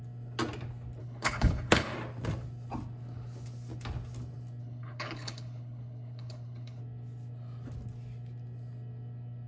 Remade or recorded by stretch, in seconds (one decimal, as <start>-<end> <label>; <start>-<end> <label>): 0.0-1.0 recorded; 1.0-1.9 remade; 1.9-4.6 recorded; 4.6-6.8 remade; 6.8-9.5 recorded